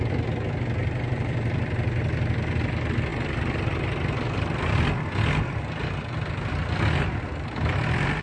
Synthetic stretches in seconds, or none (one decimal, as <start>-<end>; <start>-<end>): 0.8-1.6; 3.1-7.5